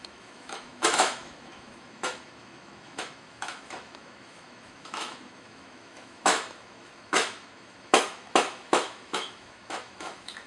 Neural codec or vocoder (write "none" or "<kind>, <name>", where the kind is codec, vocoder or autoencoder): autoencoder, DAC-VAE